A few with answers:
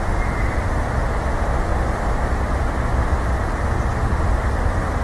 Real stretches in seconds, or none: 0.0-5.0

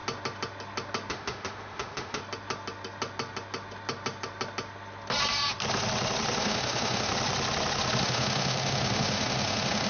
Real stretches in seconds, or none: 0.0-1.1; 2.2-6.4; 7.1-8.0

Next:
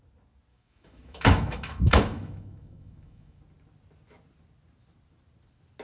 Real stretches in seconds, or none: 0.0-0.5; 3.4-5.8

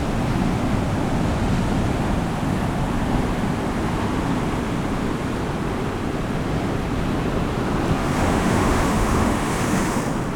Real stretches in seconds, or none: 0.0-8.0; 10.0-10.4

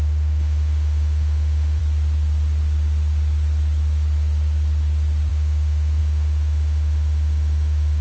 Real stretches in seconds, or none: 1.8-5.3